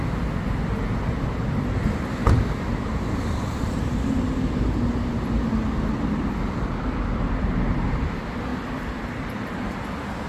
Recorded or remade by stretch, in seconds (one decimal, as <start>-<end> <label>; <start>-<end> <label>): 0.0-2.2 recorded; 2.2-3.9 remade; 3.9-10.3 recorded